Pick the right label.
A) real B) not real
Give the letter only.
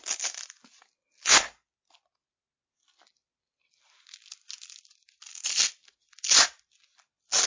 A